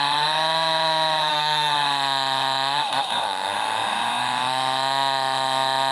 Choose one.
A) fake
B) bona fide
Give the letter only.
A